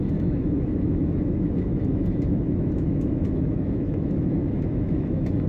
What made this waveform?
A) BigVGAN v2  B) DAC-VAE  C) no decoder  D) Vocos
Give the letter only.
B